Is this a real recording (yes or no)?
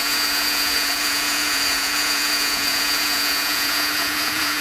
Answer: no